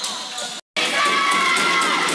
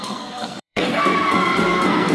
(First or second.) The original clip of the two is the first